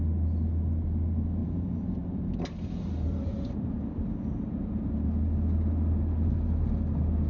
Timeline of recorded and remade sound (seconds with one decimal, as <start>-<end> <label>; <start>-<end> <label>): 0.0-1.4 recorded; 1.4-4.9 remade; 4.9-7.3 recorded